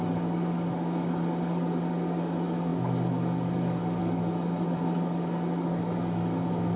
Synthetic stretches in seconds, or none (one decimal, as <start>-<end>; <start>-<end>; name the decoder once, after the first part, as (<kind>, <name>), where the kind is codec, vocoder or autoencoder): 0.0-6.8 (codec, DAC)